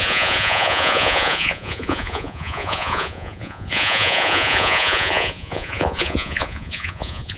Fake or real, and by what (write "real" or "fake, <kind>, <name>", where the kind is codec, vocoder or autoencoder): fake, vocoder, Vocos